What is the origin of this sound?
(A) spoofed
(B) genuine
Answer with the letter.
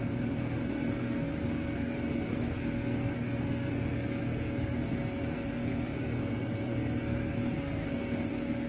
A